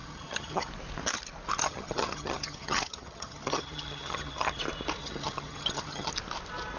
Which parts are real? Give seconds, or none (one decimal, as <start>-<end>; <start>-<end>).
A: 0.7-1.6; 4.6-5.0; 6.1-6.8